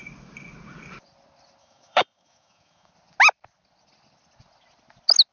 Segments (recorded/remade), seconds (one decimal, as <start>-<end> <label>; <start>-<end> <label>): 0.0-1.6 recorded; 1.6-2.9 remade; 2.9-5.3 recorded